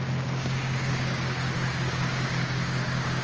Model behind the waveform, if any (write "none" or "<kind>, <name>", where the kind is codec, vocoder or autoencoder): codec, DAC